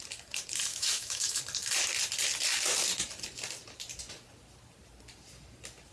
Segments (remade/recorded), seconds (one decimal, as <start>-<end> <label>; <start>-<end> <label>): 0.0-0.7 recorded; 0.7-1.4 remade; 1.4-5.9 recorded